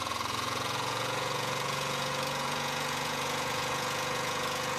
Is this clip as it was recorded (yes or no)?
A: no